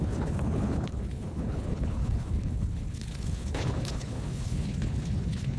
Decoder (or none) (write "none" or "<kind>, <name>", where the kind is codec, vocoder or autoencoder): codec, HILCodec